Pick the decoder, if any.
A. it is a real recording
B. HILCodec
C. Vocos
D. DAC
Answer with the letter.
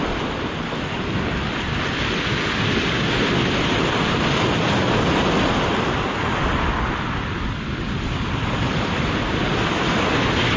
A